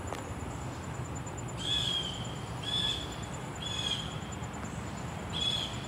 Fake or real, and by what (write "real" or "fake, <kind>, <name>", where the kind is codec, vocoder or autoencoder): fake, vocoder, BigVGAN v2